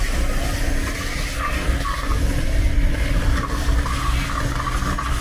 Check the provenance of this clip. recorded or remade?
recorded